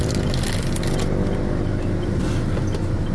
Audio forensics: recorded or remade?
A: recorded